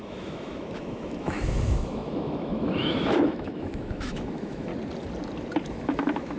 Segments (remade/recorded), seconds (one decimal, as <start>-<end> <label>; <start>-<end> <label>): 0.0-4.7 remade; 4.7-5.7 recorded; 5.7-6.4 remade